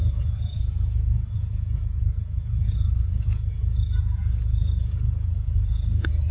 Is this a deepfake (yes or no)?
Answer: yes